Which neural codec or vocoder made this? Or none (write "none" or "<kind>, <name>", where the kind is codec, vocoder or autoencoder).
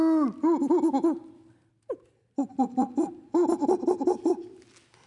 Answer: none